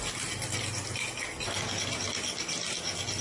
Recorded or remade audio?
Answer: recorded